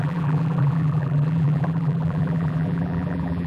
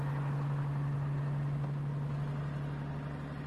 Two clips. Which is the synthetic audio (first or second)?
first